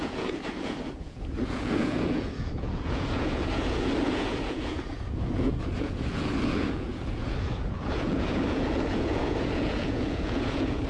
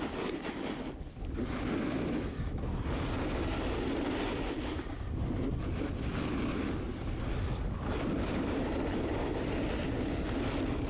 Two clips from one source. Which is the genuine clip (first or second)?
second